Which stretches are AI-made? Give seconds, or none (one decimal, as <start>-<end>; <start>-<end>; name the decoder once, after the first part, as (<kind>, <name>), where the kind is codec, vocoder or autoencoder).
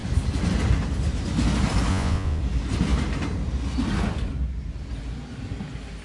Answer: 1.9-2.4 (vocoder, Vocos)